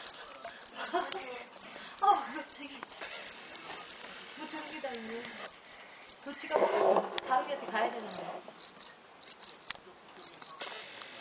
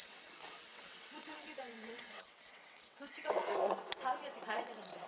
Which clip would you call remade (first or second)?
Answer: second